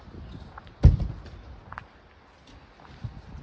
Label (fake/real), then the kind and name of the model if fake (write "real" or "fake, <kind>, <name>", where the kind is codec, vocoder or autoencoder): real